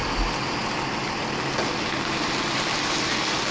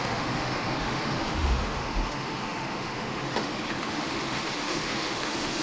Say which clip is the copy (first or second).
second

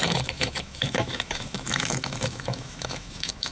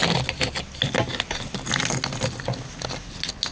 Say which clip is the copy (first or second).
first